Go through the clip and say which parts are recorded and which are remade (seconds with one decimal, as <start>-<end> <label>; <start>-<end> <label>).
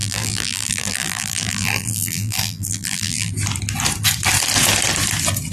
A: 0.0-3.3 remade; 3.3-5.5 recorded